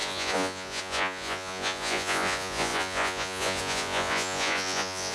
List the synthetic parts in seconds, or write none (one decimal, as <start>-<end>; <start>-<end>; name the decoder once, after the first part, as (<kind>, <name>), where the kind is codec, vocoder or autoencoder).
0.0-5.1 (vocoder, Vocos)